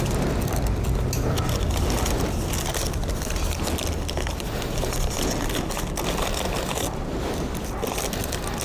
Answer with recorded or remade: recorded